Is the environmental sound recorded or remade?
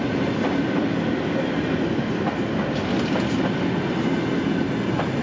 recorded